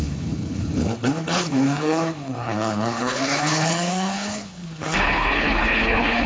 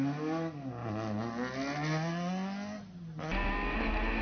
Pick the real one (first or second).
second